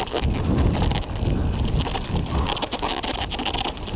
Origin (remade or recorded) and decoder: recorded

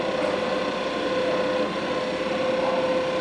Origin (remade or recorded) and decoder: recorded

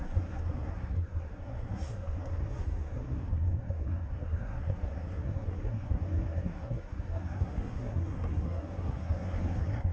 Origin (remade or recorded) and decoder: remade, codec, SNAC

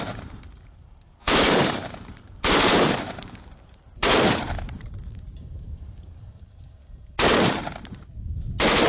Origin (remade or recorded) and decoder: remade, vocoder, BigVGAN v2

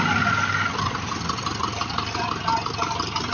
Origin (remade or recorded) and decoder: recorded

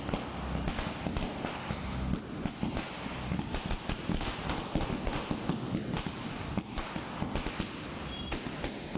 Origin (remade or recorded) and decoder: recorded